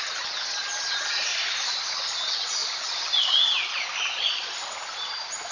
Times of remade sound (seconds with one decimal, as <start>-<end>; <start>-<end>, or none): none